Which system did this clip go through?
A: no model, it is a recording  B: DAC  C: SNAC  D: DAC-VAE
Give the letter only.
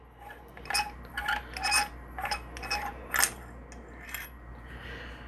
A